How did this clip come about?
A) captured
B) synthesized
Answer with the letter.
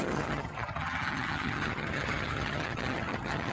B